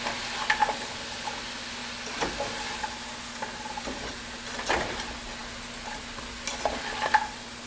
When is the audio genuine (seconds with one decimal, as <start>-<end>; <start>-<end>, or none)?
0.0-7.7